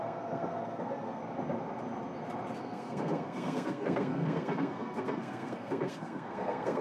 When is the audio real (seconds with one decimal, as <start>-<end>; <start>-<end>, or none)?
1.2-2.6

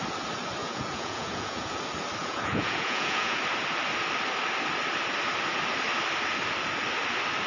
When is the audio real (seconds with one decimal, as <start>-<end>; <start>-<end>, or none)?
0.0-0.6; 1.8-2.2; 3.4-7.5

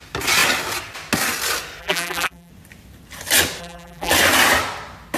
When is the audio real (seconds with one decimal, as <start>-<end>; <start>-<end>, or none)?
0.0-1.8; 2.5-3.6; 4.1-5.2

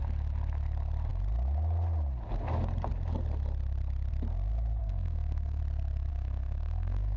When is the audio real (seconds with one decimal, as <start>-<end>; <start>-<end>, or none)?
0.0-4.8; 5.6-6.1

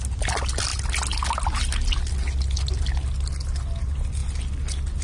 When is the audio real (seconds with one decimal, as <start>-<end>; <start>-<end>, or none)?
0.0-5.0

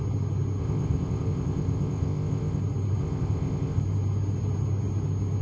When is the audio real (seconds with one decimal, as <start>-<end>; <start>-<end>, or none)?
0.0-0.6; 2.6-3.0; 3.8-5.4

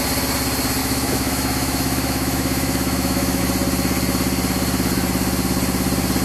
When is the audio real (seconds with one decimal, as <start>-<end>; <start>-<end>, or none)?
0.0-0.8; 3.4-6.2